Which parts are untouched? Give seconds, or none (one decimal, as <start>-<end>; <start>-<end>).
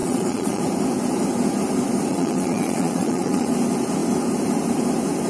0.6-2.1; 3.5-5.3